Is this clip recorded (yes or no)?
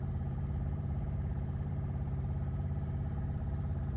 no